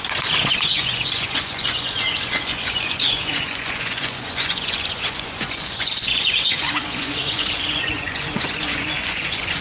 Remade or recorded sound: remade